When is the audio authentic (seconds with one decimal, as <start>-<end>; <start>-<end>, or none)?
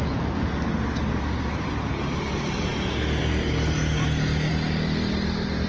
0.0-5.7